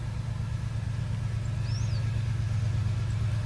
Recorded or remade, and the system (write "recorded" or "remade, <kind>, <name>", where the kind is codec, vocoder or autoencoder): recorded